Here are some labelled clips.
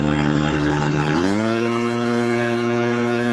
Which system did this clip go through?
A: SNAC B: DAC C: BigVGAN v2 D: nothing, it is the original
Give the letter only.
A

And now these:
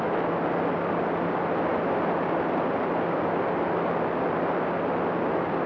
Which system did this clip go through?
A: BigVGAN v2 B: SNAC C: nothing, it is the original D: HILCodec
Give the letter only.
C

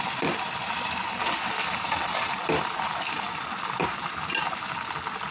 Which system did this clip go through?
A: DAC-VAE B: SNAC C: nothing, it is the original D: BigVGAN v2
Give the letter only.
C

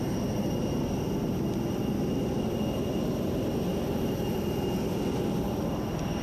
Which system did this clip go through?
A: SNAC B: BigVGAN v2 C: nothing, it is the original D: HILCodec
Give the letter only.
C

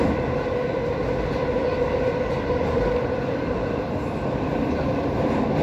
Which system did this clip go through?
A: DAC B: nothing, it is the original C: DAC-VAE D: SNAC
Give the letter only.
B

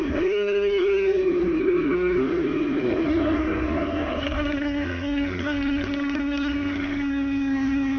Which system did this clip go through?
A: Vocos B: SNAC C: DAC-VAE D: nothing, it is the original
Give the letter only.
B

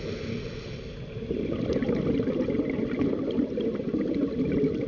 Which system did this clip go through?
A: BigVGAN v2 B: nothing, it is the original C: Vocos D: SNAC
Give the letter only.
B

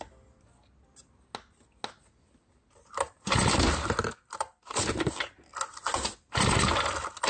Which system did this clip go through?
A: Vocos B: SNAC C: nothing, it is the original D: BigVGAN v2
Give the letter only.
C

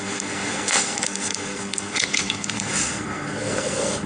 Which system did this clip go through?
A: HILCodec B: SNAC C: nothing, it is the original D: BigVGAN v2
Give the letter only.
B